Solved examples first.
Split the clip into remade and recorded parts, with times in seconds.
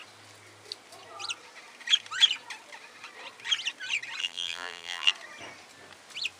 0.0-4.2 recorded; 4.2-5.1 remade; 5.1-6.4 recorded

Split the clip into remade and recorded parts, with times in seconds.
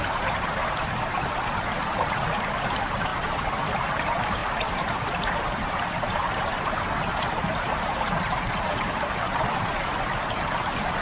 0.0-3.1 remade; 3.1-3.9 recorded; 3.9-11.0 remade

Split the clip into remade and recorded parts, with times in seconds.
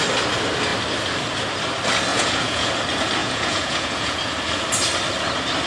0.0-2.1 recorded; 2.1-2.7 remade; 2.7-3.2 recorded; 3.2-4.2 remade; 4.2-5.7 recorded